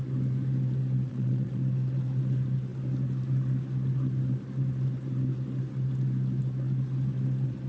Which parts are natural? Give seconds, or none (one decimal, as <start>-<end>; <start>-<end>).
0.0-1.1; 1.6-7.7